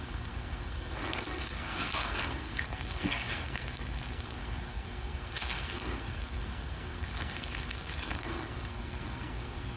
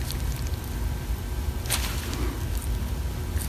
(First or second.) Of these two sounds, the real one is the second